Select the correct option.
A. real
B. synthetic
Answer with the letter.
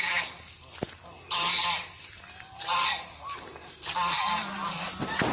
B